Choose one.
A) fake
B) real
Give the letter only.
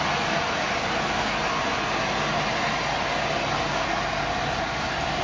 B